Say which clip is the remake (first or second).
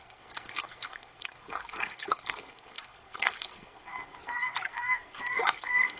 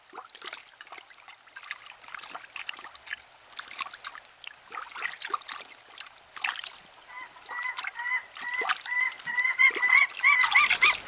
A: first